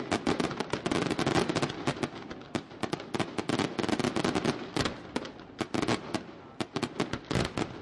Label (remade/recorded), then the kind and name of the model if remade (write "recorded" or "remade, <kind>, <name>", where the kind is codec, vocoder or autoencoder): recorded